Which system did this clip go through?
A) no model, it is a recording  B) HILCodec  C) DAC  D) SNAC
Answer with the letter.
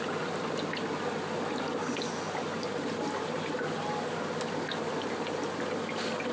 A